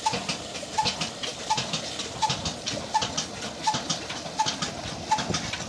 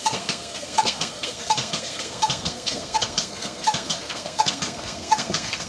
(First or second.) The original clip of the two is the first